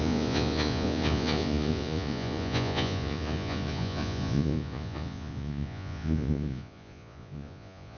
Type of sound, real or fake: fake